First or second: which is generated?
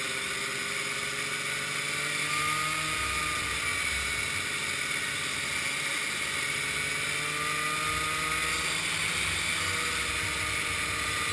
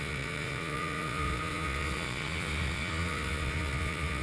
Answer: second